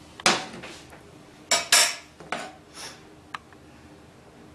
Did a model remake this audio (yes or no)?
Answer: no